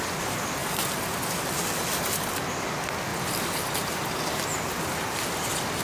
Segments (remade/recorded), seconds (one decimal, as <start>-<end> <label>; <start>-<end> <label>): 0.0-5.8 recorded